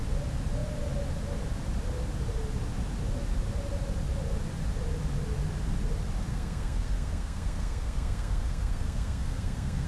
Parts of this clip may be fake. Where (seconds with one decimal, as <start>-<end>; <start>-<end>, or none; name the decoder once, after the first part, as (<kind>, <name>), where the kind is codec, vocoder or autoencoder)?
6.3-9.9 (codec, SNAC)